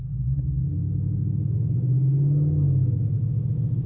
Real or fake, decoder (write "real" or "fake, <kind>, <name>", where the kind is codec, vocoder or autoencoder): real